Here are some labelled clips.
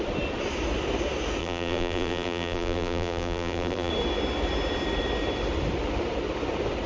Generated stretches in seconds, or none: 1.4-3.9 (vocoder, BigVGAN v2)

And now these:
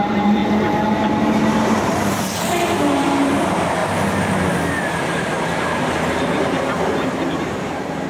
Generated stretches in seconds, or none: 0.0-0.4 (vocoder, BigVGAN v2); 0.9-3.8; 7.3-8.1

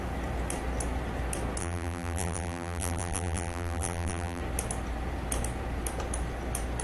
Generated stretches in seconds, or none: 1.6-4.4 (vocoder, BigVGAN v2)

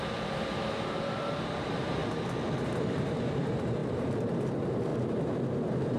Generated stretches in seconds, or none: 0.0-2.0 (vocoder, BigVGAN v2); 2.8-6.0

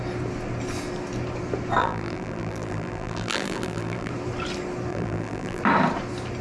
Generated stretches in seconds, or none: 1.8-4.1 (vocoder, BigVGAN v2); 4.9-5.6

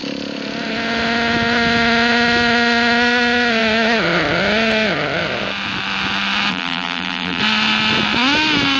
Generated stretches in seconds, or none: 6.5-7.4 (vocoder, BigVGAN v2)